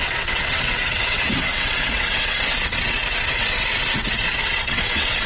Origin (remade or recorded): remade